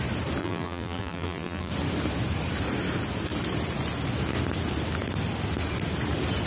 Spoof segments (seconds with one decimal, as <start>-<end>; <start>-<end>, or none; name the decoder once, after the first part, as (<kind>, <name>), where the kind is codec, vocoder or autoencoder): 0.4-1.7 (vocoder, BigVGAN v2)